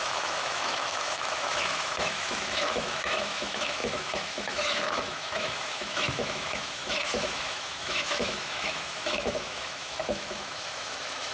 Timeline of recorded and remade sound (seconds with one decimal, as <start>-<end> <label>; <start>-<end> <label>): 0.0-11.3 remade